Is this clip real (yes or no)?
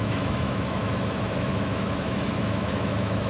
no